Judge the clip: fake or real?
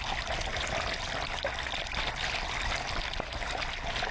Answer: real